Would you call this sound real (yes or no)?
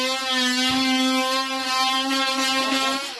yes